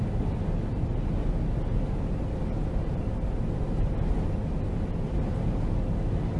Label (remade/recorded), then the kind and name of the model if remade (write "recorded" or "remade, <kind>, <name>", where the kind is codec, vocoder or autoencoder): recorded